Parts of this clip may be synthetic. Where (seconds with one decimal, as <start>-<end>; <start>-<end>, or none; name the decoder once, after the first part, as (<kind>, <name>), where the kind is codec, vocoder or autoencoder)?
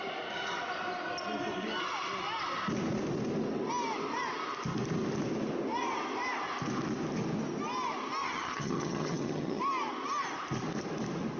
8.2-9.6 (vocoder, HiFi-GAN)